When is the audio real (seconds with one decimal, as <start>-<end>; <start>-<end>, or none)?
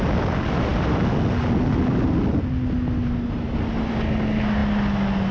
0.0-5.3